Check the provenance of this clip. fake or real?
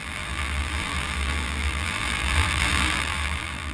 fake